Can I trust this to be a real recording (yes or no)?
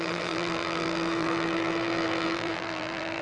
no